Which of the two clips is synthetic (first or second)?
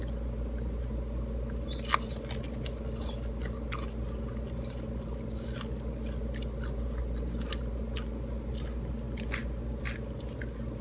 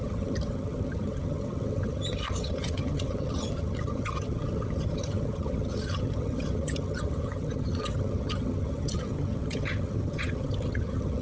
second